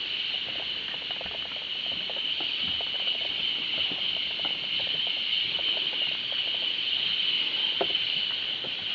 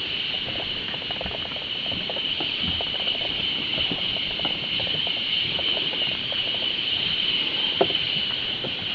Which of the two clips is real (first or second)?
first